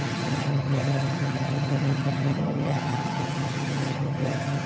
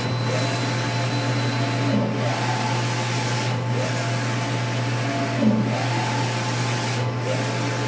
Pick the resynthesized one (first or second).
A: first